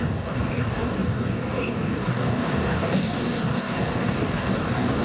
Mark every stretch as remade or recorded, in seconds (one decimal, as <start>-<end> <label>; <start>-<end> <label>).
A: 0.0-5.0 remade